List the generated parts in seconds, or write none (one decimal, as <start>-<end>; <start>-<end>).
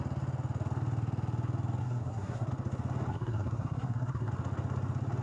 1.8-2.5; 3.1-4.3